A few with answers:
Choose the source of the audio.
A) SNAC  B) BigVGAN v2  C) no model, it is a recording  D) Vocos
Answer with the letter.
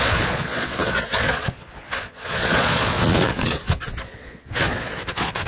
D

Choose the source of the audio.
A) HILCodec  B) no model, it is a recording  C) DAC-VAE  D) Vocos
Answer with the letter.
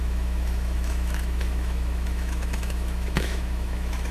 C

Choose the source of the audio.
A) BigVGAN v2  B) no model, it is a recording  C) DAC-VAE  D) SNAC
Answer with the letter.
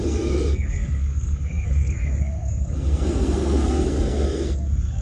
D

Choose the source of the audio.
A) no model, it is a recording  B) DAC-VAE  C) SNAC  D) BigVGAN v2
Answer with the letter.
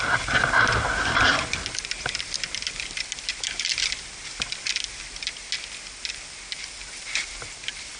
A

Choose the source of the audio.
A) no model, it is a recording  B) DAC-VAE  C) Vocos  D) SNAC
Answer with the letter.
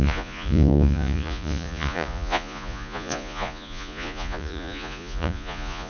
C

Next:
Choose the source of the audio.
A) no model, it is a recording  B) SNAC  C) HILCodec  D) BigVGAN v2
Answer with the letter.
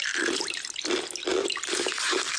A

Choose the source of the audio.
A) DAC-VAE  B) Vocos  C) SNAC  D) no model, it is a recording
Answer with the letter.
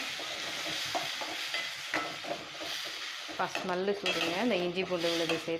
D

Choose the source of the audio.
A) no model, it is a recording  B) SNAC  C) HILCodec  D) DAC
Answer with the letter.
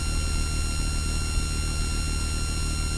A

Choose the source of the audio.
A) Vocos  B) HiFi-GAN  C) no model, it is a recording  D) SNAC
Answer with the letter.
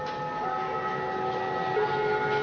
C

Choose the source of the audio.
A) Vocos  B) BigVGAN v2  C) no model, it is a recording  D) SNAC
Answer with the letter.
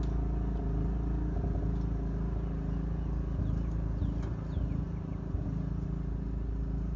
C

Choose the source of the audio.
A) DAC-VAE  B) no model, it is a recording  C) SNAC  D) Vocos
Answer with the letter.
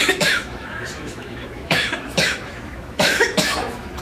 A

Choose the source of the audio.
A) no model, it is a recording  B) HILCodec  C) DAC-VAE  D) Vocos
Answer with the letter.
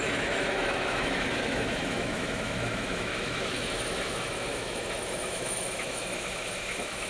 C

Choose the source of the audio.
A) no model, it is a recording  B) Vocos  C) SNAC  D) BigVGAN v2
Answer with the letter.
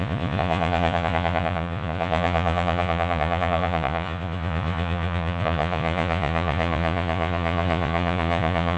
B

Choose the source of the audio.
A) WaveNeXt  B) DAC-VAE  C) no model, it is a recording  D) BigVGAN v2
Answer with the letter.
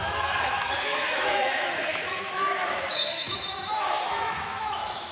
B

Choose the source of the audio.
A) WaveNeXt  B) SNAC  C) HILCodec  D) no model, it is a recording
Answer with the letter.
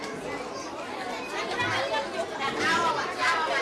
D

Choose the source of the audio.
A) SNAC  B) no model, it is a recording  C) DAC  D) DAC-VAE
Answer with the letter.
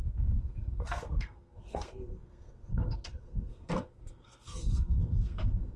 A